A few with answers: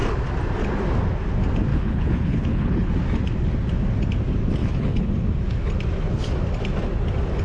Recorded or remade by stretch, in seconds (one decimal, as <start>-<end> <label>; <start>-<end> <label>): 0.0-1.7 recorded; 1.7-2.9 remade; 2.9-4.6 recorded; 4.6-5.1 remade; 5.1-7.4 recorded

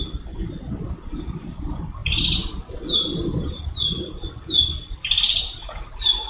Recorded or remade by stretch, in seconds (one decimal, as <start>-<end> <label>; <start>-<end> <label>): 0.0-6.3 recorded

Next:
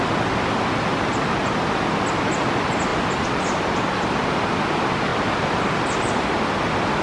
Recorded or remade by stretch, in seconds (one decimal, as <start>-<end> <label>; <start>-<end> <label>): 0.0-7.0 recorded